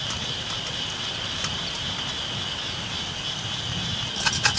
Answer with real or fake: real